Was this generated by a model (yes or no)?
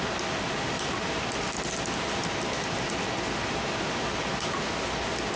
no